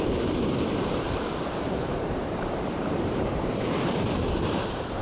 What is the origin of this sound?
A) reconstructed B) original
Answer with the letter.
A